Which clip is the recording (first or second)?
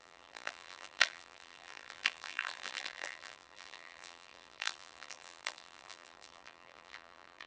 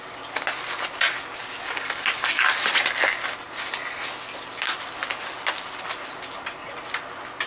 second